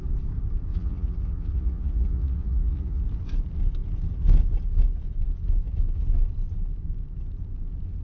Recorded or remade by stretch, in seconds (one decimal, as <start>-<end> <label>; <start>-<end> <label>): 0.0-0.7 recorded; 0.7-3.0 remade; 3.0-8.0 recorded